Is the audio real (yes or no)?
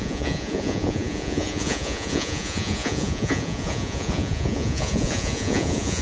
no